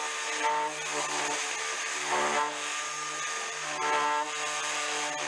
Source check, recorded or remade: recorded